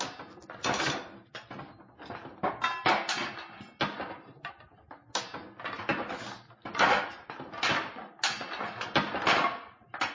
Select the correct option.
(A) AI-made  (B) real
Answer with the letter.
B